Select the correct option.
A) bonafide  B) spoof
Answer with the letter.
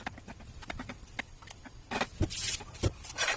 A